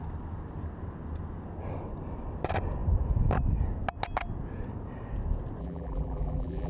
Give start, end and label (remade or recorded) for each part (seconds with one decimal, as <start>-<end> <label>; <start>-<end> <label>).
0.0-5.6 recorded; 5.6-6.7 remade

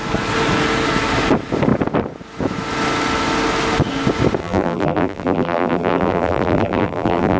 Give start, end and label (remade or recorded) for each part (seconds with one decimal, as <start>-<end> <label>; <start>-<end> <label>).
0.0-4.4 recorded; 4.4-7.4 remade

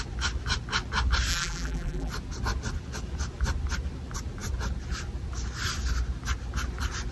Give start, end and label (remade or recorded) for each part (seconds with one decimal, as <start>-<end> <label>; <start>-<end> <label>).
0.0-1.3 recorded; 1.3-2.1 remade; 2.1-7.1 recorded

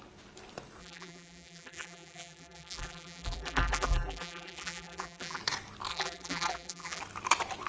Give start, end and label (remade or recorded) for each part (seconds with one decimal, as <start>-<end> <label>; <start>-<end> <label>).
0.0-0.8 recorded; 0.8-5.4 remade; 5.4-5.9 recorded; 5.9-7.0 remade; 7.0-7.7 recorded

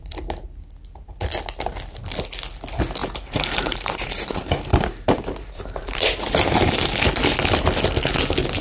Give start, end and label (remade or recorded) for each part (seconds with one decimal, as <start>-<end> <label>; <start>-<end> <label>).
0.0-3.0 recorded; 3.0-6.7 remade; 6.7-8.6 recorded

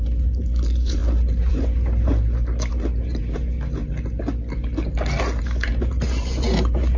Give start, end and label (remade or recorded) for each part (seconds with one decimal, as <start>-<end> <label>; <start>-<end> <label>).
0.0-1.0 remade; 1.0-1.5 recorded; 1.5-2.1 remade; 2.1-2.7 recorded; 2.7-3.8 remade; 3.8-5.4 recorded; 5.4-7.0 remade